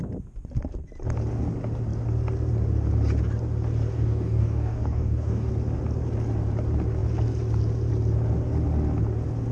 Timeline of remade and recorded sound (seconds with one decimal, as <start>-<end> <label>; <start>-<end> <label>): 0.0-3.9 recorded; 3.9-5.5 remade; 5.5-9.5 recorded